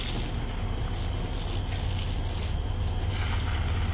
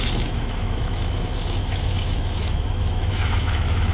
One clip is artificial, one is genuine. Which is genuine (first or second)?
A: first